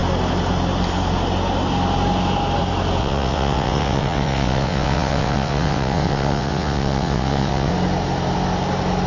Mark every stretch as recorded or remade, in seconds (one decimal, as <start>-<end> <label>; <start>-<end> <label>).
0.0-3.0 recorded; 3.0-7.7 remade; 7.7-9.1 recorded